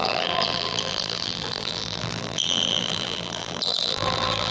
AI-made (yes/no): yes